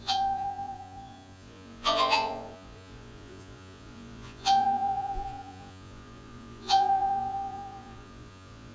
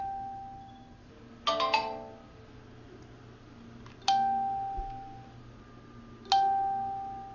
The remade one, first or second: first